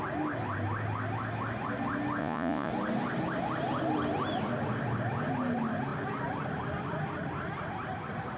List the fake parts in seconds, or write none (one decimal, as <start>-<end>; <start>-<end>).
2.2-2.7